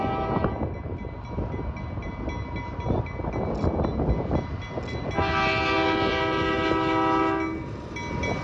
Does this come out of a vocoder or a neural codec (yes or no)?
no